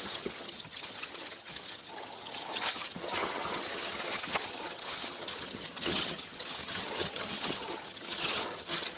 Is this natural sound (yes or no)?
no